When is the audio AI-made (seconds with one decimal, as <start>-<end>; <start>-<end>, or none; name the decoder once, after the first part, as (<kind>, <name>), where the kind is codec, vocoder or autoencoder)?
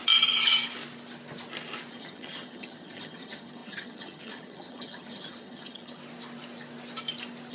1.9-6.0 (vocoder, HiFi-GAN)